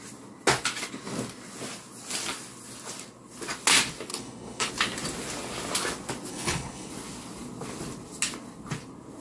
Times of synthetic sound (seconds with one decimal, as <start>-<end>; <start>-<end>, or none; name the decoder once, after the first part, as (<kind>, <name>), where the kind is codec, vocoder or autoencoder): 4.1-4.7 (codec, HILCodec); 6.3-6.9